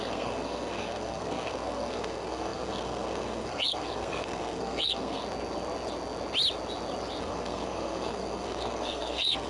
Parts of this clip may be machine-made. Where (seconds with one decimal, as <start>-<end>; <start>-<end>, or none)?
0.0-5.2; 7.2-9.5